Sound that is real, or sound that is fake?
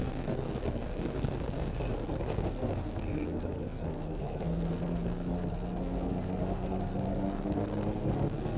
fake